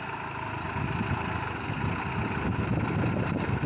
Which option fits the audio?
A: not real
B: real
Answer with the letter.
B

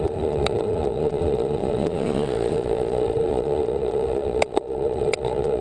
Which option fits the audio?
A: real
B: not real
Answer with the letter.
B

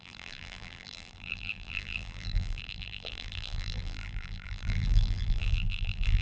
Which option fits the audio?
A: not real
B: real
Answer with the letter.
A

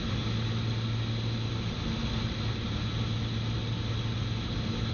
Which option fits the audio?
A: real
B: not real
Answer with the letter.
A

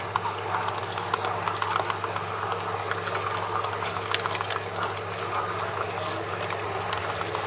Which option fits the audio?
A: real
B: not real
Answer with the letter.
A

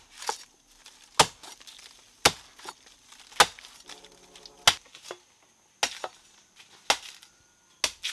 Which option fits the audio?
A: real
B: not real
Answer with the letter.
A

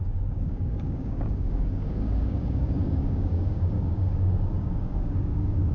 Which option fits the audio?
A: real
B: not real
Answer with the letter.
B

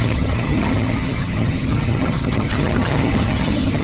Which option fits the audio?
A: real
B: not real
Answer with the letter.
B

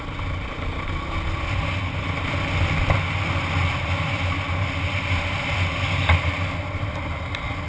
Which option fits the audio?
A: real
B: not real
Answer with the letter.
A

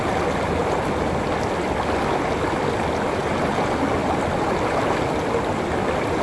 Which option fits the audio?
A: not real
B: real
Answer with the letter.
B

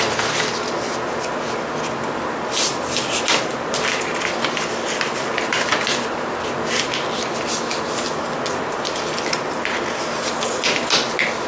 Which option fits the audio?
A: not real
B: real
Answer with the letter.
B